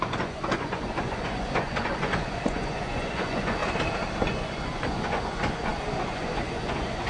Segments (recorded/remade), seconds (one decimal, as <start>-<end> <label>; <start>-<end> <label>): 0.0-3.6 remade; 3.6-4.3 recorded; 4.3-7.1 remade